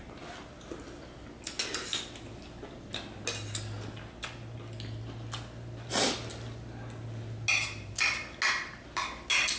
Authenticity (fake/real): real